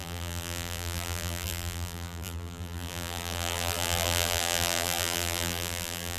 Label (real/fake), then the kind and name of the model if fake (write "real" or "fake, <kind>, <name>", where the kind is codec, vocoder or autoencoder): fake, vocoder, BigVGAN v2